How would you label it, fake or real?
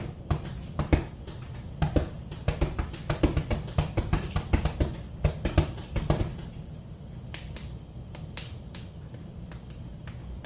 real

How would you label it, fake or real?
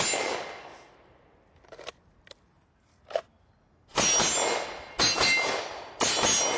real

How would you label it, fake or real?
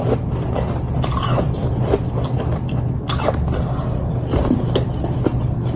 real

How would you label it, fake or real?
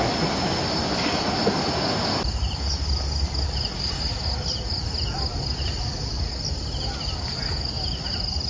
real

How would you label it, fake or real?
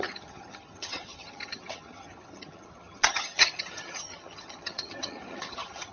fake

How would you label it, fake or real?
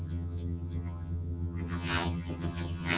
fake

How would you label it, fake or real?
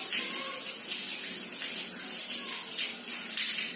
real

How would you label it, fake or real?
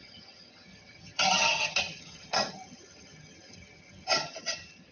fake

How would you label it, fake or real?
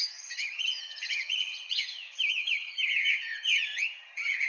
fake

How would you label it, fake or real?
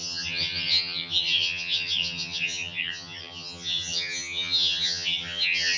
fake